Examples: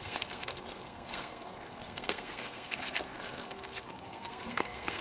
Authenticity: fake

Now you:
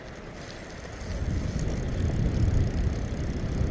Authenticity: real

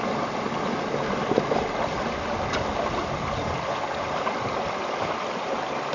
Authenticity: real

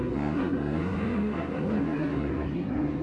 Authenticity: fake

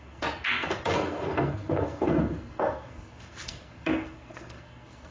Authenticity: fake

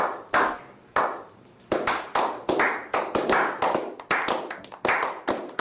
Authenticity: real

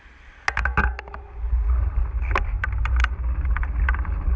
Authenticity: real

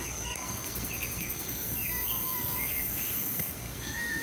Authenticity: fake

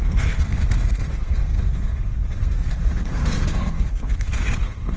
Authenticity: fake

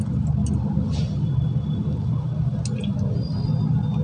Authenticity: real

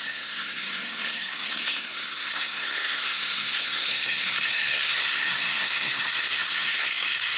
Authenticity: fake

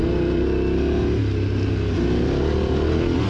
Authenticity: real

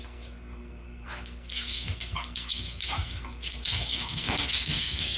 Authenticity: fake